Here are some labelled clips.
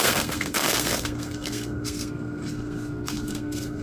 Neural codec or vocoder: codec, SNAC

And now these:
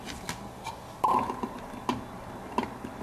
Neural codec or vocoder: none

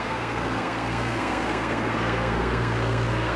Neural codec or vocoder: codec, SNAC